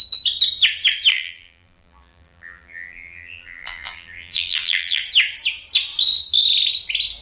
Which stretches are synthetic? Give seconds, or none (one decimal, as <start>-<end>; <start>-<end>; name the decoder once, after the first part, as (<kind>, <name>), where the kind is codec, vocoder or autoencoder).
1.1-5.0 (vocoder, BigVGAN v2)

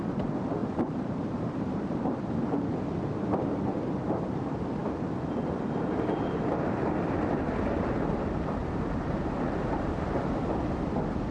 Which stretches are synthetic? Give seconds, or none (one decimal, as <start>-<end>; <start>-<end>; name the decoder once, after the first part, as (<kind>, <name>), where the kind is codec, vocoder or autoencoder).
0.6-2.3 (vocoder, BigVGAN v2); 8.6-10.4

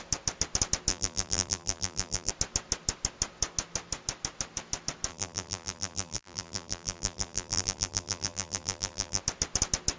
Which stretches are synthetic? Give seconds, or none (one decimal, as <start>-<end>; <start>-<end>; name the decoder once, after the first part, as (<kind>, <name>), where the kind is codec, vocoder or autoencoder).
0.9-2.3 (vocoder, BigVGAN v2); 5.1-9.2

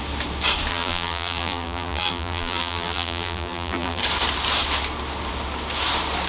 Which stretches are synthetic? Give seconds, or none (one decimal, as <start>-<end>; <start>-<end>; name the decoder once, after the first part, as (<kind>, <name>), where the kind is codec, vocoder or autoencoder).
0.7-4.0 (vocoder, BigVGAN v2)